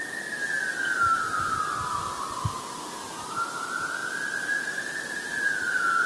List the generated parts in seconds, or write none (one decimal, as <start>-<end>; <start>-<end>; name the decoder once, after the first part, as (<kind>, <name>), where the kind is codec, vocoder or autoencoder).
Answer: none